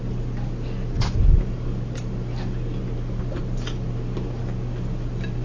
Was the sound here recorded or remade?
recorded